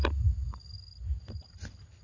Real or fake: real